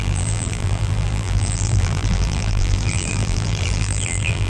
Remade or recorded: remade